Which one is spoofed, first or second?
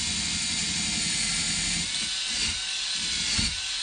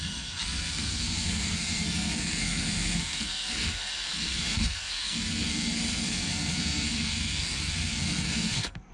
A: second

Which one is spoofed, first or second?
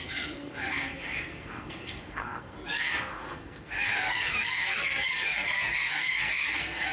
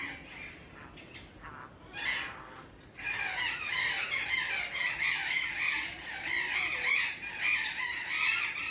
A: first